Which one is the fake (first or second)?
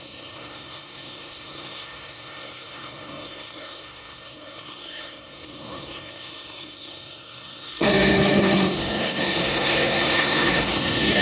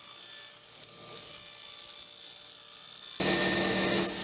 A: first